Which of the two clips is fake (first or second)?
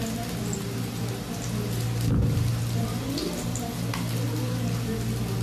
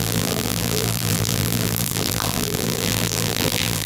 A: second